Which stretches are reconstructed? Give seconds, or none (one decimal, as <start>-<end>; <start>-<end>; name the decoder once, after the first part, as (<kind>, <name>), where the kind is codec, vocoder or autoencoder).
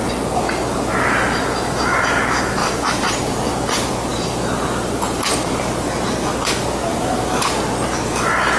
2.6-3.4 (vocoder, BigVGAN v2); 6.9-7.4